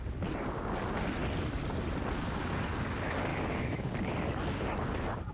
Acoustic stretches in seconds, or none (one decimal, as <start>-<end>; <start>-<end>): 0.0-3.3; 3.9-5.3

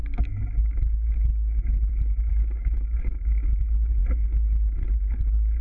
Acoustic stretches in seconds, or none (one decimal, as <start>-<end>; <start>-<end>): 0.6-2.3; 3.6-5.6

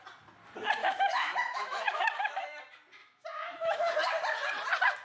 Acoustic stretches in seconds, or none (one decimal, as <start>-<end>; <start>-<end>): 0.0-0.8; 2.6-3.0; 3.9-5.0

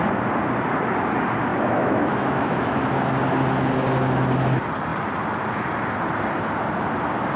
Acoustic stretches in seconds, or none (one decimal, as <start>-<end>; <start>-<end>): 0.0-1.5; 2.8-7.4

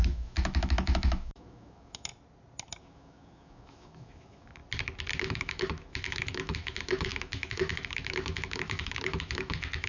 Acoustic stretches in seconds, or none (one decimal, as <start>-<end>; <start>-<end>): 2.1-2.8; 4.6-5.2

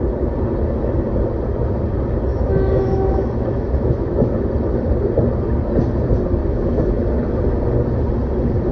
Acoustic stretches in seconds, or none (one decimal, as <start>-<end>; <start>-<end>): 0.0-2.3; 4.5-6.4; 7.0-8.7

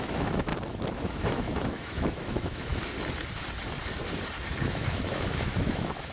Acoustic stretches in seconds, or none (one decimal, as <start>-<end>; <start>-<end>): 0.5-1.0; 2.7-4.6